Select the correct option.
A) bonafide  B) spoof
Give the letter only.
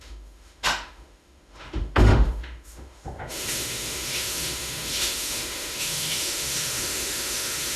B